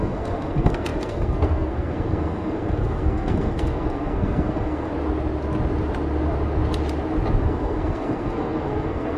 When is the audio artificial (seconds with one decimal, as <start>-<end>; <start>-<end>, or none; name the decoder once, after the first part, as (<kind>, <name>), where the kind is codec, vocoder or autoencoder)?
0.0-4.9 (codec, SNAC); 7.4-9.2